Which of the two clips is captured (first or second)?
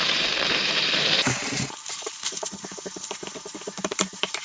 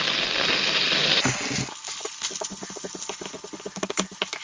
second